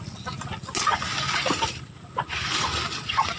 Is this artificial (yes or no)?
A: no